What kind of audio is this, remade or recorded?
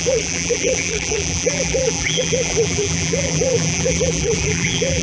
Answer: remade